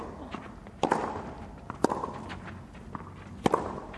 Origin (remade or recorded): recorded